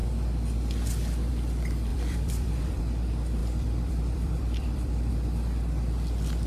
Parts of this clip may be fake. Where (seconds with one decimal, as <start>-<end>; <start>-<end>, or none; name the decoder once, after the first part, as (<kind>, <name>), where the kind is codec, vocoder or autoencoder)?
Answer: 1.9-2.8 (vocoder, BigVGAN v2); 3.4-5.1